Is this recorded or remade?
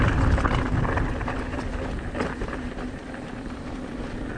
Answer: recorded